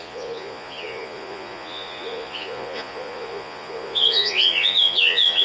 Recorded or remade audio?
remade